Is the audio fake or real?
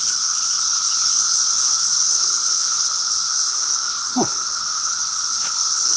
fake